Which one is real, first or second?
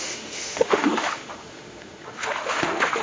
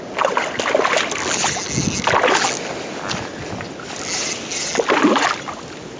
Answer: second